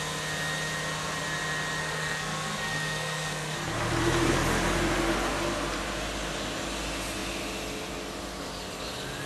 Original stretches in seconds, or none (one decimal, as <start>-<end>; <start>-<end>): 0.0-1.8; 3.7-9.3